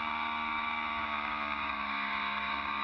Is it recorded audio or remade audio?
remade